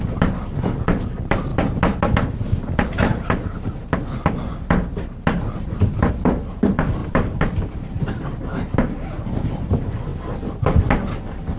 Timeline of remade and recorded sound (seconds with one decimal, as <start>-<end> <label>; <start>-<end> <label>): 0.0-11.6 recorded

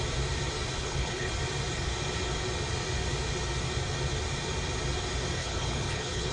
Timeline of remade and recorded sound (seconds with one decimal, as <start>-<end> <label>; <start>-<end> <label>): 0.0-0.8 recorded; 0.8-1.3 remade; 1.3-5.4 recorded; 5.4-6.3 remade

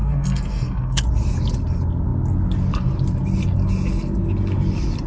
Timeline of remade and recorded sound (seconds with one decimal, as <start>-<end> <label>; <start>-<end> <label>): 0.0-1.0 remade; 1.0-5.1 recorded

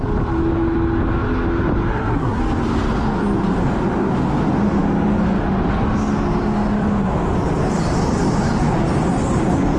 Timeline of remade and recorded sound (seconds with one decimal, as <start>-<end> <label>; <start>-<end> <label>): 0.0-1.9 recorded; 1.9-2.4 remade; 2.4-9.8 recorded

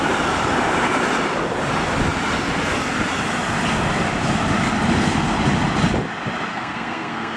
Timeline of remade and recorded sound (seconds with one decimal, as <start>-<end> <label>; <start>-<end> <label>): 0.0-6.5 recorded; 6.5-7.4 remade

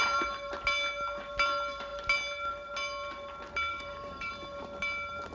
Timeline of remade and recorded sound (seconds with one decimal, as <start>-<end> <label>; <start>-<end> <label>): 0.0-3.7 recorded; 3.7-4.3 remade; 4.3-5.3 recorded

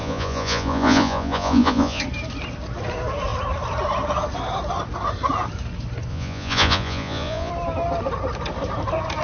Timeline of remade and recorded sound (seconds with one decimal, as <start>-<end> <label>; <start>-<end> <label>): 0.0-2.0 remade; 2.0-6.1 recorded; 6.1-7.5 remade; 7.5-9.2 recorded